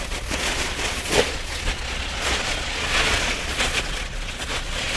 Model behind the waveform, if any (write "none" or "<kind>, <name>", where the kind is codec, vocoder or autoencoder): vocoder, Vocos